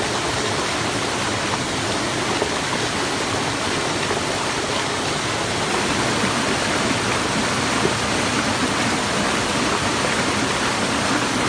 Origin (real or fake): real